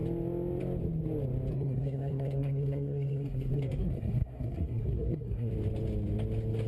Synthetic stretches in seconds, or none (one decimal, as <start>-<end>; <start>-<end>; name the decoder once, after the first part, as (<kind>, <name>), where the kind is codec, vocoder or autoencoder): 1.5-5.5 (codec, SNAC)